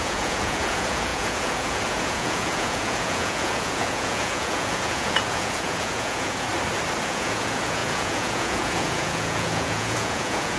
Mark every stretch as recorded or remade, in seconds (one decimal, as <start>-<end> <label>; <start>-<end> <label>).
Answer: 0.0-6.5 remade; 6.5-7.0 recorded; 7.0-10.6 remade